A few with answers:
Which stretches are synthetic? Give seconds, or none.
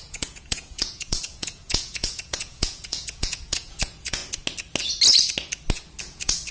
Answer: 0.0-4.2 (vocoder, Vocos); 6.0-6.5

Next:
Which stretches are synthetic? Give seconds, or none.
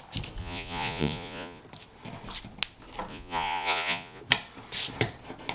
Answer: 0.4-1.6 (vocoder, Vocos); 3.1-4.2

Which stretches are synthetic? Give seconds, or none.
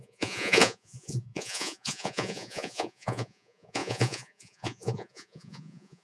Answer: 0.0-6.0 (vocoder, Vocos)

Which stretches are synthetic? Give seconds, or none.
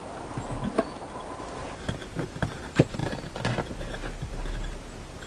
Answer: none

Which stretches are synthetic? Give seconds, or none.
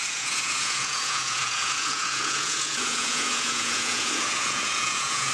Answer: 0.0-5.3 (vocoder, Vocos)